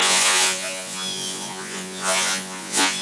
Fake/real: fake